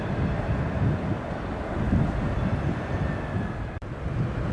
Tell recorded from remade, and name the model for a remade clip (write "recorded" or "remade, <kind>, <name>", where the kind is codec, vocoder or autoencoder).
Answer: remade, vocoder, BigVGAN v2